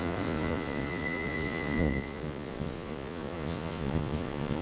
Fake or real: fake